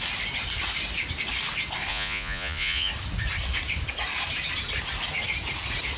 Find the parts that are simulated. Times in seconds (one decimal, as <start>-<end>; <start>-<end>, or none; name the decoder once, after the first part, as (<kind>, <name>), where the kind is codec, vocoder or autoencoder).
1.9-2.9 (vocoder, Vocos)